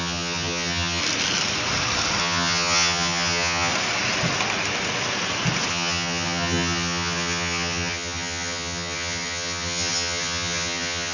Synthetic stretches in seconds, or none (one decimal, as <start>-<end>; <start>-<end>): 0.0-1.0; 2.2-3.7; 5.7-11.1